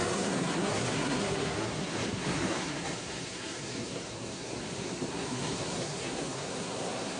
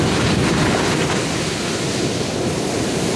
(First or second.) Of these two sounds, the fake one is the first